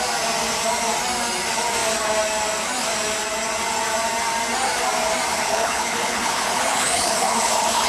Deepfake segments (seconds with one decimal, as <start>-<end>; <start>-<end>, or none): 5.3-7.9